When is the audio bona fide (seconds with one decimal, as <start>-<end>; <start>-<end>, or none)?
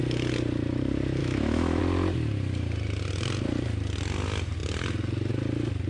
0.0-1.2; 1.8-5.9